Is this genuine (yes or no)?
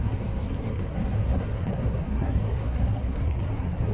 no